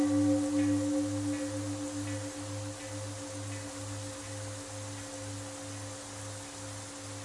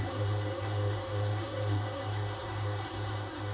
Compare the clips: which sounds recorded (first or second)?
first